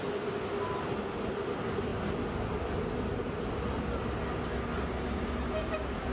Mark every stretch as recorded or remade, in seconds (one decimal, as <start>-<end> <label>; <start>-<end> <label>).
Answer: 0.0-6.1 recorded